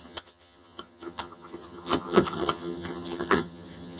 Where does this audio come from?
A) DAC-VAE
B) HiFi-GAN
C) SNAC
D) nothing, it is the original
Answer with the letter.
B